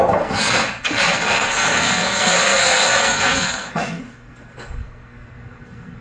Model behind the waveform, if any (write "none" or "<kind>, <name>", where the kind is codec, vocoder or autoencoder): codec, SNAC